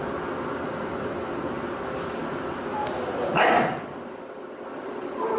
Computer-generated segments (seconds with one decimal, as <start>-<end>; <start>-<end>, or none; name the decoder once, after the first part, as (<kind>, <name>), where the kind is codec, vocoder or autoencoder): none